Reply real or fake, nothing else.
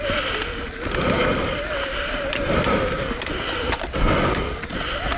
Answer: real